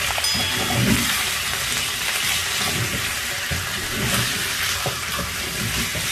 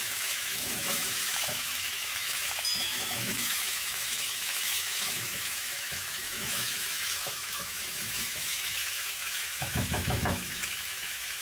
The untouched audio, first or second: first